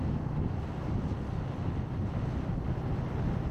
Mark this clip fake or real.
real